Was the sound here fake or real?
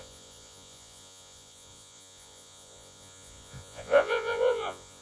fake